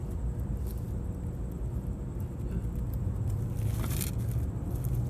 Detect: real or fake real